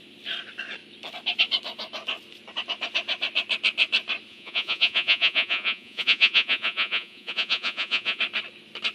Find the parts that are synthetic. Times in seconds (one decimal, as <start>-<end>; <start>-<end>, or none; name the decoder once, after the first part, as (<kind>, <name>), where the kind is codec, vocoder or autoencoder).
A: 4.3-8.2 (vocoder, Vocos)